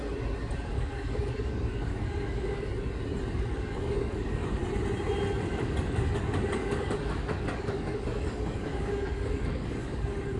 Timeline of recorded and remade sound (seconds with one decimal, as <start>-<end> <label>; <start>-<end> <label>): 0.0-0.6 recorded; 0.6-2.7 remade; 2.7-3.3 recorded; 3.3-4.6 remade; 4.6-5.5 recorded; 5.5-10.4 remade

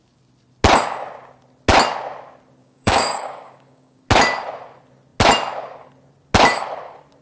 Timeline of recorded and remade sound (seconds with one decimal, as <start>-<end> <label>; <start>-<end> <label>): 0.0-2.6 recorded; 2.6-4.0 remade; 4.0-7.2 recorded

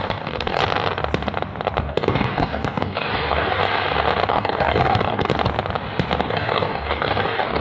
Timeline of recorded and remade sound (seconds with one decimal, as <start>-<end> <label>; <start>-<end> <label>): 0.0-0.6 remade; 0.6-1.8 recorded; 1.8-3.6 remade; 3.6-4.3 recorded; 4.3-5.3 remade; 5.3-6.2 recorded; 6.2-7.6 remade